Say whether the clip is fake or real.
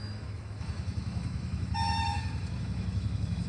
fake